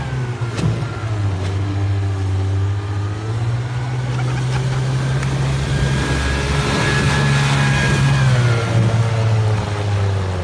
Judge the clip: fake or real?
real